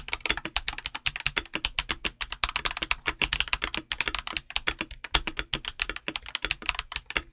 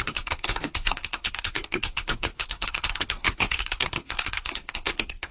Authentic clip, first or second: first